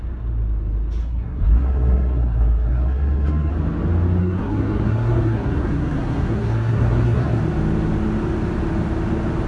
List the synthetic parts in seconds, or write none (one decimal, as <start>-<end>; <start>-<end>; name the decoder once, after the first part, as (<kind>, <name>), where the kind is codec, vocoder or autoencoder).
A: 1.0-3.5 (codec, SNAC); 4.2-7.4